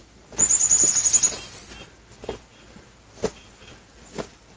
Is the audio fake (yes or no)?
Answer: no